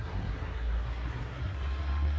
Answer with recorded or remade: remade